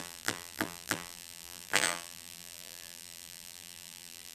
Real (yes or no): no